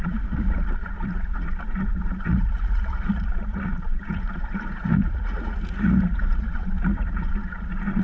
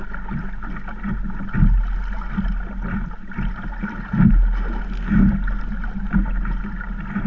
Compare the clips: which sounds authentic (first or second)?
second